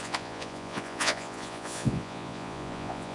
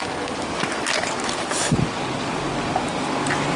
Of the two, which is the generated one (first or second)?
first